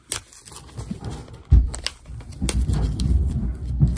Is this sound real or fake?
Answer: real